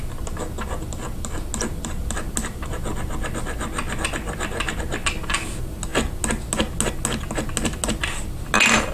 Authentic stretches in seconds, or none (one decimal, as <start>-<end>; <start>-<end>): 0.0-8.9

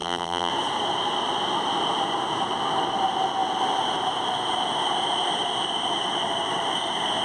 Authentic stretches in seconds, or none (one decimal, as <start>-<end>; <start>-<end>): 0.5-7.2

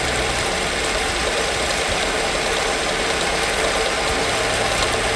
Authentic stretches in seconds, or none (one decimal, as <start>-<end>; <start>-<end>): 0.0-1.2; 4.3-5.2

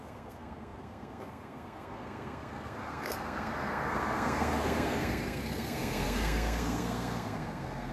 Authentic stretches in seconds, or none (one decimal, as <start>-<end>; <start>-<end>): none

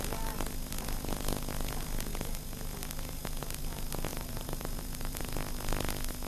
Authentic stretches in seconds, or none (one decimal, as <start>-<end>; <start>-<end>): 0.0-4.1; 5.2-6.3

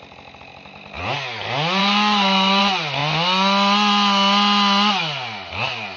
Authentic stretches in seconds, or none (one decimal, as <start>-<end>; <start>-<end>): 0.0-1.8; 2.6-6.0

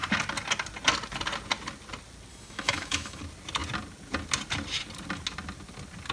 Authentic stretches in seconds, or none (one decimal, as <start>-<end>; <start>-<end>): 0.0-2.3; 3.2-6.1